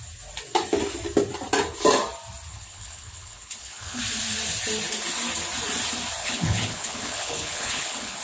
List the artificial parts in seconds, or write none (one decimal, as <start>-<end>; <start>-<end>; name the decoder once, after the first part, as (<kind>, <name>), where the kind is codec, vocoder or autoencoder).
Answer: 2.5-4.0 (codec, HILCodec); 6.2-8.2